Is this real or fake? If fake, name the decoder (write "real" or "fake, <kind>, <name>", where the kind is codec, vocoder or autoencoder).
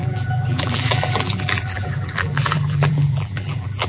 fake, vocoder, BigVGAN v2